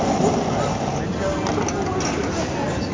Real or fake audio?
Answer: real